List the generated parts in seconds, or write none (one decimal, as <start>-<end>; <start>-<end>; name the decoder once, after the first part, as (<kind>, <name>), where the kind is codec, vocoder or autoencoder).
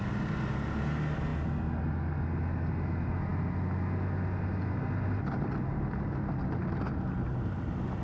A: none